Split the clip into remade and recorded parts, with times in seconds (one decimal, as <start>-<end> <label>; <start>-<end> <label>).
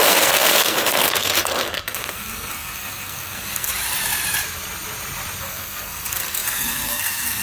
0.0-3.7 remade; 3.7-5.4 recorded; 5.4-7.4 remade